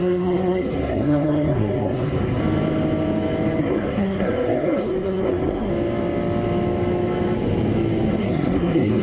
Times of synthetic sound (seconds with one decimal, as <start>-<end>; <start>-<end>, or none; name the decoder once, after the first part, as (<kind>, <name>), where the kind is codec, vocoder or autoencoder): 0.0-2.4 (codec, SNAC); 3.6-5.7; 8.2-9.0